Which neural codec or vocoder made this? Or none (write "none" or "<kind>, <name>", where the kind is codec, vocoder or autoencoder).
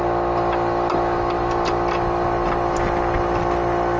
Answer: none